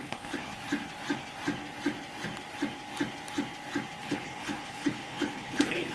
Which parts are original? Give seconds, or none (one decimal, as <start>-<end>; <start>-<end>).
0.5-4.0